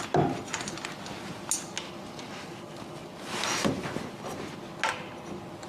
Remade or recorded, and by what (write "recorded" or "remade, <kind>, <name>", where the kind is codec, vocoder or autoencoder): recorded